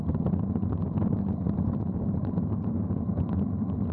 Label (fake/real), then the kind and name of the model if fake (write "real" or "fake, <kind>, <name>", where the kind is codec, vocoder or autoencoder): real